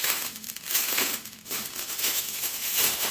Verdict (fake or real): fake